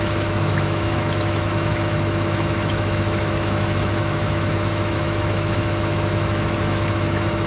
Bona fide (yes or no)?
no